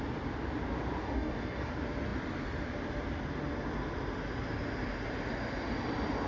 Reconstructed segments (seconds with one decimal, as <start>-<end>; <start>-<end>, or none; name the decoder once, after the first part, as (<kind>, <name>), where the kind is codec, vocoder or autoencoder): 1.0-1.7 (codec, DAC)